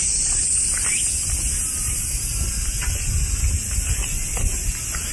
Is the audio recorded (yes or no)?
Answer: yes